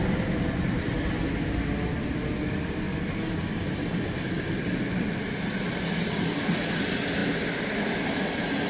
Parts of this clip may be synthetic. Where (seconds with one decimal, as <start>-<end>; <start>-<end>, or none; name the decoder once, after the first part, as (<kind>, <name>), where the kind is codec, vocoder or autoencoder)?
none